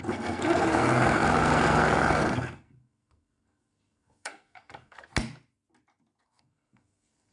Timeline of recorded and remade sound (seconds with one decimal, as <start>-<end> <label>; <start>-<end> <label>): 0.0-5.1 remade; 5.1-6.2 recorded; 6.2-7.3 remade